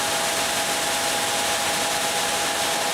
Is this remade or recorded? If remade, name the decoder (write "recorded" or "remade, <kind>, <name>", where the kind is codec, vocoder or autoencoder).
recorded